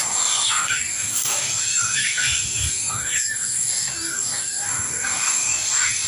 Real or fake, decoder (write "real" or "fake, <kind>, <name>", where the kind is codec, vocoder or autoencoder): fake, codec, DAC